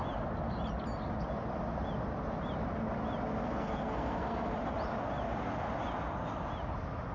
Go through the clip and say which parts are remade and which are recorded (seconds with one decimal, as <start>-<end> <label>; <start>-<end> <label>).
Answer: 0.0-3.4 recorded; 3.4-4.5 remade; 4.5-7.1 recorded